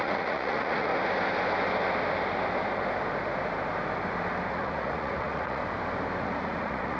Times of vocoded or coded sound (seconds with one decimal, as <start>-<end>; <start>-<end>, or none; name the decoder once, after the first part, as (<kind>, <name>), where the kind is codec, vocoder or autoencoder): 0.0-0.9 (vocoder, Vocos); 4.5-5.6; 6.2-7.0